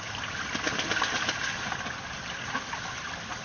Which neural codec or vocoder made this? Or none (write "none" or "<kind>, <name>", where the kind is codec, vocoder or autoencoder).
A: none